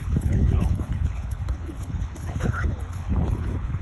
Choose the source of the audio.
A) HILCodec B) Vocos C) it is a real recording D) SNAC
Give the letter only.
A